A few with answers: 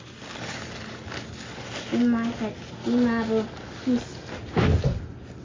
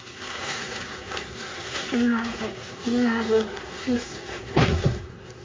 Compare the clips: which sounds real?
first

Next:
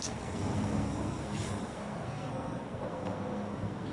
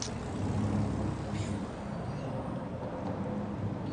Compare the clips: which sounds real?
second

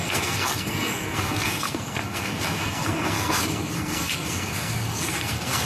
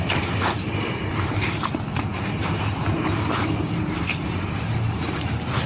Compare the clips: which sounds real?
second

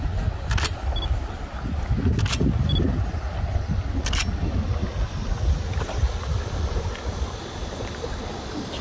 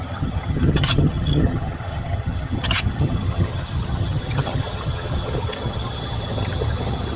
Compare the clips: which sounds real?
first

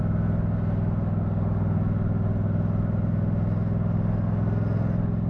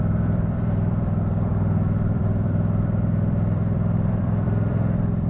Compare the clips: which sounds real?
first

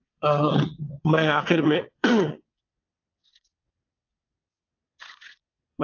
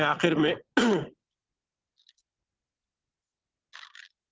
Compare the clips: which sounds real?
second